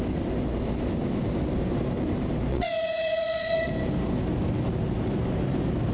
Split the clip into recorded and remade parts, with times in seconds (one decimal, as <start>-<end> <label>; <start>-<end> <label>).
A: 0.0-2.5 recorded; 2.5-3.7 remade; 3.7-5.9 recorded